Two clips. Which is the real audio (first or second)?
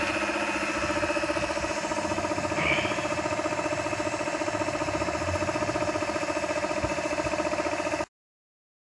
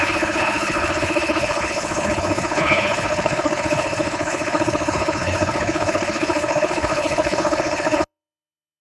first